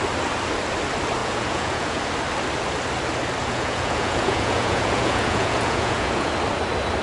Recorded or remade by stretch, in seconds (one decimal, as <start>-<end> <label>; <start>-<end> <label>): 0.0-1.2 recorded; 1.2-2.0 remade; 2.0-3.4 recorded; 3.4-6.3 remade; 6.3-7.0 recorded